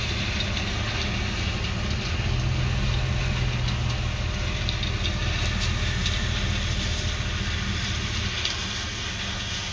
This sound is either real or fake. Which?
real